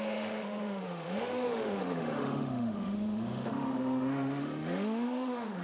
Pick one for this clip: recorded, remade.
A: remade